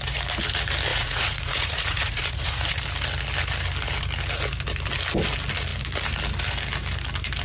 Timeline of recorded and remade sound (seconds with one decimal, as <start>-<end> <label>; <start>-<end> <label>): 0.0-0.9 recorded; 0.9-2.8 remade; 2.8-7.4 recorded